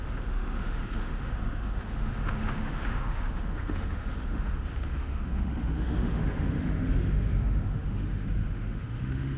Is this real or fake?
fake